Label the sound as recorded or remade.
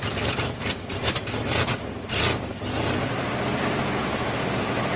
remade